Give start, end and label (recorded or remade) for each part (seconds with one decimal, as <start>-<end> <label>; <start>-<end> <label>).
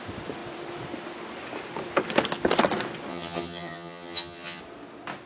0.0-3.1 recorded; 3.1-4.6 remade; 4.6-5.3 recorded